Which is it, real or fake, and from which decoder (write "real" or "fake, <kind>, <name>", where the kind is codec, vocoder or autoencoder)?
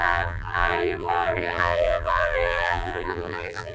fake, vocoder, BigVGAN v2